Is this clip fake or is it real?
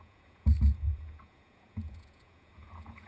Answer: fake